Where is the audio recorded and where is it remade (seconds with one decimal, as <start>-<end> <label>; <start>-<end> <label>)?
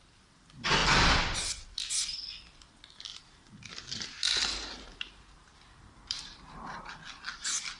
0.0-3.1 recorded; 3.1-6.9 remade; 6.9-7.8 recorded